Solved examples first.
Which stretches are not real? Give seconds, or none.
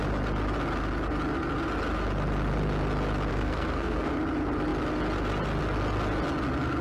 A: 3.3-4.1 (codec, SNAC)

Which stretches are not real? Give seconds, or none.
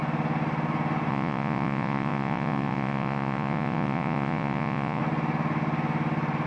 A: 1.1-5.0 (vocoder, Vocos)